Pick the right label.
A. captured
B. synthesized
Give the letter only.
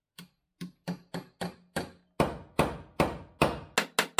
A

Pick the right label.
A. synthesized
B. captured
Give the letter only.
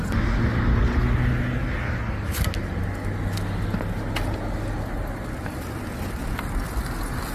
B